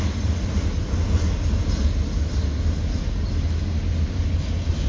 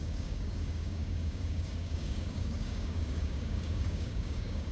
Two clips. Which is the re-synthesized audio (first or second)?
second